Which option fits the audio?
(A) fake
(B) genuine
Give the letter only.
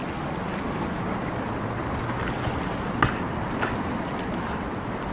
B